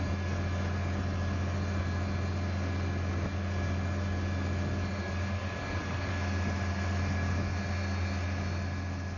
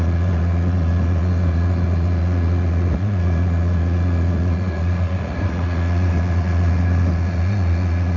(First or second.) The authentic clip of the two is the first